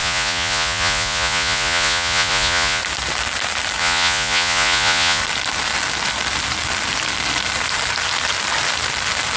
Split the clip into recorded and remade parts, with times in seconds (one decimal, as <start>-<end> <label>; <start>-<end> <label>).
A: 0.0-2.8 remade; 2.8-3.8 recorded; 3.8-5.2 remade; 5.2-9.4 recorded